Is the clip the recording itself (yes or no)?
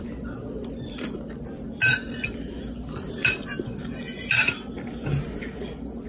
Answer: yes